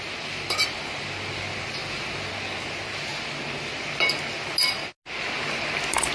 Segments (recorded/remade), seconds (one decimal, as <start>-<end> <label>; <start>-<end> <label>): 0.0-6.1 recorded